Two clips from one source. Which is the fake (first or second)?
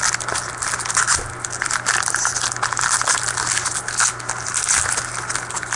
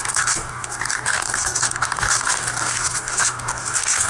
second